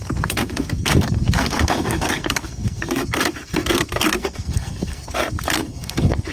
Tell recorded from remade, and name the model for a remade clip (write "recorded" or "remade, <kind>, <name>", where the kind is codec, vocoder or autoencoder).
remade, codec, SNAC